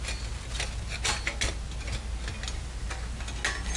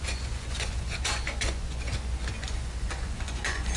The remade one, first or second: second